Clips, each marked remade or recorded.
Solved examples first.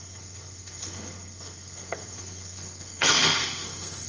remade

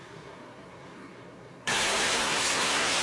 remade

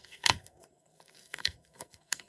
remade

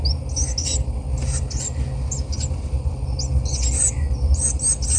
recorded